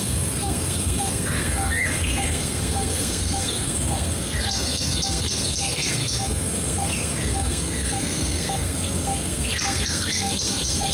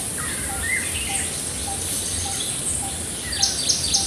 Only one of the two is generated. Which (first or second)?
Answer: first